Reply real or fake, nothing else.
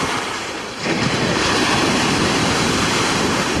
fake